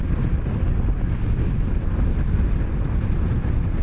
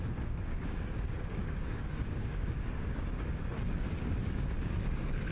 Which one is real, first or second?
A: first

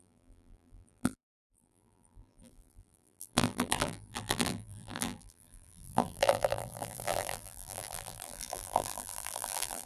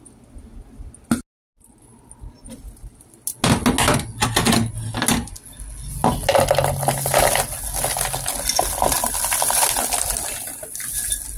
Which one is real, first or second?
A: second